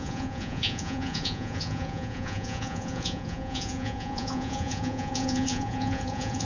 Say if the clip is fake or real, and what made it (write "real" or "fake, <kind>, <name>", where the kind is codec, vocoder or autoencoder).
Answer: fake, vocoder, Vocos